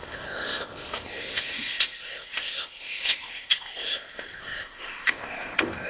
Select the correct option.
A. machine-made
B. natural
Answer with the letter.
A